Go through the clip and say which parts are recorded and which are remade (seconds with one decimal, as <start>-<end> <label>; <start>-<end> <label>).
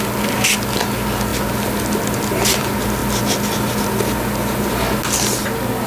0.0-5.9 recorded